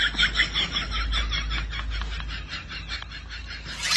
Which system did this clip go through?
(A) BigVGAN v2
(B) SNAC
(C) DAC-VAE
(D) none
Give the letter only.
D